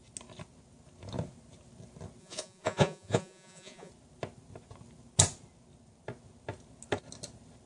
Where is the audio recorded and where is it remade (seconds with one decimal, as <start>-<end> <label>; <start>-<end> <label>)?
0.0-2.2 recorded; 2.2-3.9 remade; 3.9-7.7 recorded